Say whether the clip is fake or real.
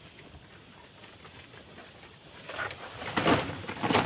real